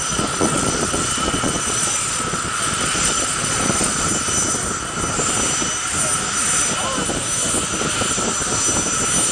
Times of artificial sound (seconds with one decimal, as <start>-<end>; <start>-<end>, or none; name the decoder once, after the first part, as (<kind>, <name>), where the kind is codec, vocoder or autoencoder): 0.0-4.1 (vocoder, Vocos)